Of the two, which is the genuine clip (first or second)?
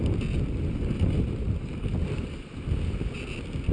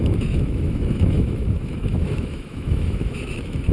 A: first